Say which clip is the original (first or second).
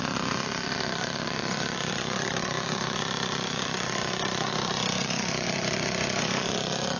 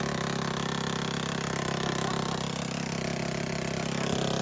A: second